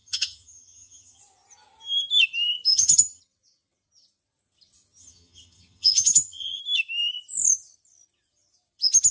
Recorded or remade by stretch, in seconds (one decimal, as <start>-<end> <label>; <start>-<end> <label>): 0.0-1.2 remade; 1.2-2.7 recorded; 2.7-3.2 remade; 3.2-5.0 recorded; 5.0-6.6 remade; 6.6-9.1 recorded